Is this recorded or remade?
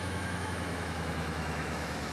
remade